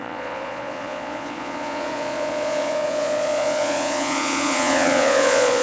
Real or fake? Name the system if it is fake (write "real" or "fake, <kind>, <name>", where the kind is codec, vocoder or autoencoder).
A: fake, vocoder, Vocos